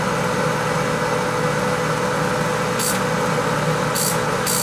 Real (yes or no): yes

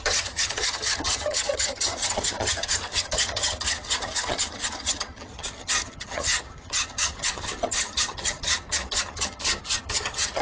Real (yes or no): no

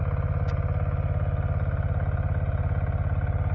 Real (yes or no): yes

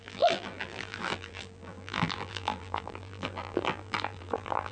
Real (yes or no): no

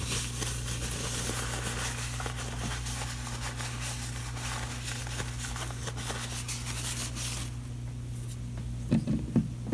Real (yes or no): yes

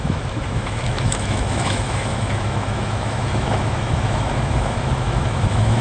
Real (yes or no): no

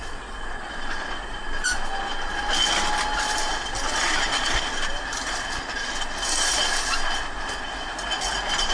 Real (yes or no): yes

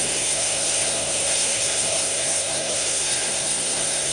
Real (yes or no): no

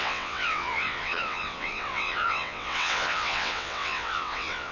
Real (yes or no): no